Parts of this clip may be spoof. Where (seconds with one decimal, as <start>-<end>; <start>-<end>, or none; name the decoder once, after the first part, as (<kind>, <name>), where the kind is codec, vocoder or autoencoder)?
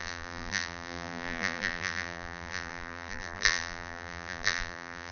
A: 0.0-5.1 (vocoder, BigVGAN v2)